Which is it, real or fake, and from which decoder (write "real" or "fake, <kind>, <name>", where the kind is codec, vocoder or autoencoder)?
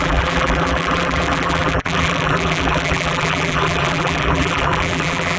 fake, vocoder, BigVGAN v2